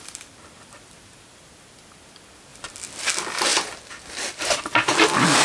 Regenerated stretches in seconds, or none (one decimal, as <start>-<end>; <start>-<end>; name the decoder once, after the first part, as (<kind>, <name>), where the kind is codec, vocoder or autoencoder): 2.5-3.1 (vocoder, BigVGAN v2); 3.5-4.6

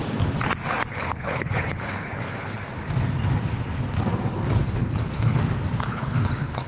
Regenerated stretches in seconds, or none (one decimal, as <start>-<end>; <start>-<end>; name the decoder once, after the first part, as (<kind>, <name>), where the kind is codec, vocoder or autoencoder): 0.9-2.7 (codec, HILCodec); 4.6-5.4; 5.9-6.7

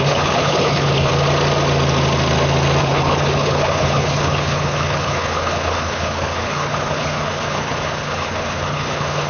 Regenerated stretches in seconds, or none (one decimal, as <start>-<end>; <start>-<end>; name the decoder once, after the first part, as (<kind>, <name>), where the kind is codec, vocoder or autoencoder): 0.0-1.1 (codec, HILCodec); 2.8-9.3